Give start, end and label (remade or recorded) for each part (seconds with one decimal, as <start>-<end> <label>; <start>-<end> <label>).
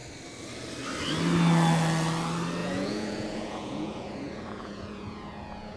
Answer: 0.0-2.6 recorded; 2.6-5.8 remade